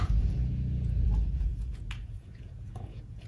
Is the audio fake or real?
fake